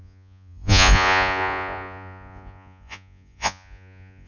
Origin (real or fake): fake